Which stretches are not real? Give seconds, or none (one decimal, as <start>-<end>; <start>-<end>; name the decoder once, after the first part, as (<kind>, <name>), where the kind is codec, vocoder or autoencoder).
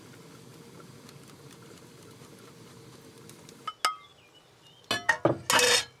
none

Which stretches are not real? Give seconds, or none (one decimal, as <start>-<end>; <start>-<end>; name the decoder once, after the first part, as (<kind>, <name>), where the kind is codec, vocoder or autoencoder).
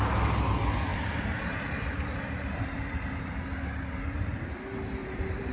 0.9-4.2 (vocoder, BigVGAN v2); 5.0-5.5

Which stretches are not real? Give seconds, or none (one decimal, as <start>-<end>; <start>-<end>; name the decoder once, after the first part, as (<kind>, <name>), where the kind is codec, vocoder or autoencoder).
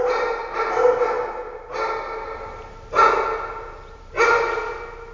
none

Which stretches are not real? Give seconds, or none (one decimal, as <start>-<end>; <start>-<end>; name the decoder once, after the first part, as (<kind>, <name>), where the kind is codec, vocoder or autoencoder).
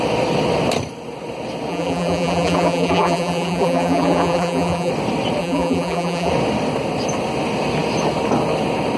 1.7-4.9 (vocoder, BigVGAN v2); 5.4-6.3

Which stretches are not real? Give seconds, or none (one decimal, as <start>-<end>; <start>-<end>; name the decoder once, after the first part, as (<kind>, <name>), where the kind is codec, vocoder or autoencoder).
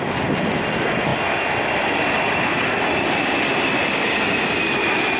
1.1-4.2 (vocoder, BigVGAN v2)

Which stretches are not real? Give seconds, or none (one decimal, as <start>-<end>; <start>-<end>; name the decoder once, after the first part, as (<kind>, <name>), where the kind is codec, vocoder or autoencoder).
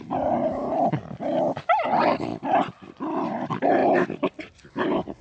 0.0-1.0 (vocoder, BigVGAN v2); 1.6-2.3; 3.2-5.2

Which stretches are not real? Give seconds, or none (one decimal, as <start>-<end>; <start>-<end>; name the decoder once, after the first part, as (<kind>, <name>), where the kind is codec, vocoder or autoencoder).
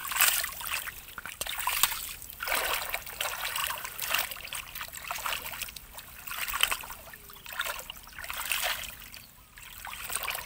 0.0-1.0 (vocoder, BigVGAN v2); 3.6-8.2; 8.7-9.5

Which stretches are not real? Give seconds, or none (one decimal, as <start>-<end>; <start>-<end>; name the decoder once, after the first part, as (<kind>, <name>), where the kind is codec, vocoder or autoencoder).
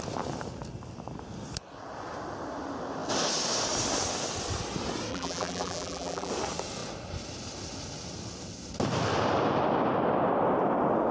5.1-6.3 (vocoder, BigVGAN v2)